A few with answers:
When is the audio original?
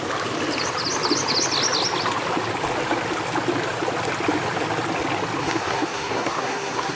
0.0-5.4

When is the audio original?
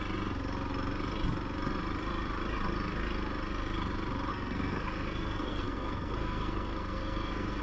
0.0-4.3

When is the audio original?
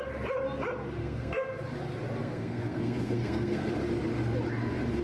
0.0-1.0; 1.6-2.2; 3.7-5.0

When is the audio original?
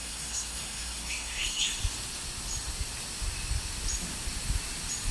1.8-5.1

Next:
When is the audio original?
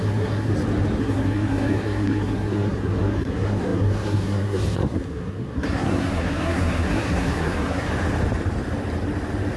0.5-1.0; 7.9-9.6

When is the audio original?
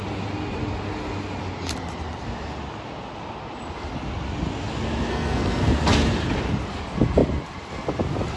0.0-5.1; 5.7-8.4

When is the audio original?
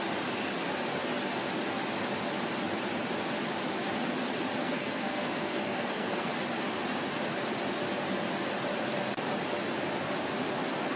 0.0-4.6; 6.3-11.0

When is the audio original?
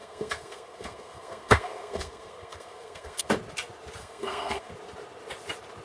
3.3-4.0; 4.7-5.8